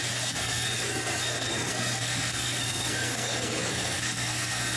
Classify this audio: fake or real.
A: fake